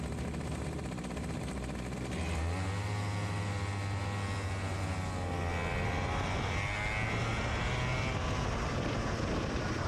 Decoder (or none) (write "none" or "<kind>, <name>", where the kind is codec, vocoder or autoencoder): none